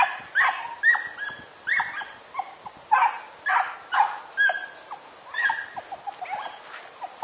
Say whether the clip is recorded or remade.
recorded